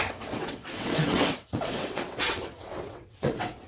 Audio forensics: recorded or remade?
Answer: remade